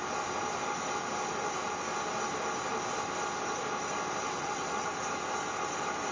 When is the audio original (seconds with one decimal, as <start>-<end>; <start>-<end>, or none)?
0.0-4.2; 4.9-6.1